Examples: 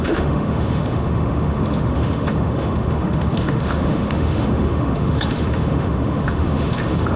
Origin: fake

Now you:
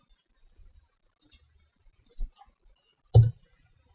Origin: real